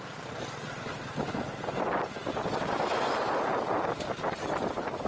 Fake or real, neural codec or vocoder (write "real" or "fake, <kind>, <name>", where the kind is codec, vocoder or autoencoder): real